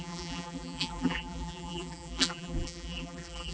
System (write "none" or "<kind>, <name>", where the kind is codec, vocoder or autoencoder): vocoder, BigVGAN v2